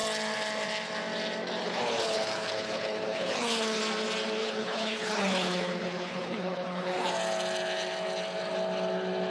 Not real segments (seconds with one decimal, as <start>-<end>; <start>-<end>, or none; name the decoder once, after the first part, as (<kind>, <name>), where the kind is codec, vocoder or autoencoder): 1.6-3.8 (codec, HILCodec); 4.4-7.1